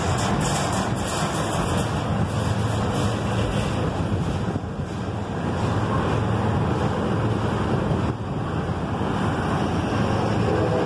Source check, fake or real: real